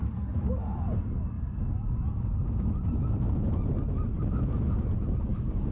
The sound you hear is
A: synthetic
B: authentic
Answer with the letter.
B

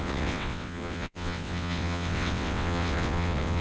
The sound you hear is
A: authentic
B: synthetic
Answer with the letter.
B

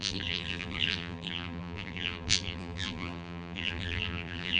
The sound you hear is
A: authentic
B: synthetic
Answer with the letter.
B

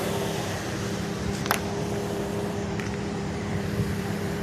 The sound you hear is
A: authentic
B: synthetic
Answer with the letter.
B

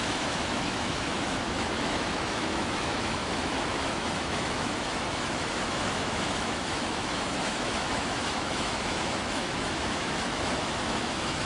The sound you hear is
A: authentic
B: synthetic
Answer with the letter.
B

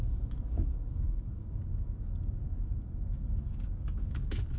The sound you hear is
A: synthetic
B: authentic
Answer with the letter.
A